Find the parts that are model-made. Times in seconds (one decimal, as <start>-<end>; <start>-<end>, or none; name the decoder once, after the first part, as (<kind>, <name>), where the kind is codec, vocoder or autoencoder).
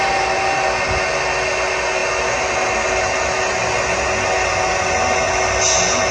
none